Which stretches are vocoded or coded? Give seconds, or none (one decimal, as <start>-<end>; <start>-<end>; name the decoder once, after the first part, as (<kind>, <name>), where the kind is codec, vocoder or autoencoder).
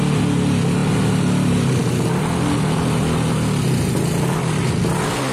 none